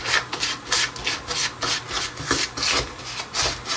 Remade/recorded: recorded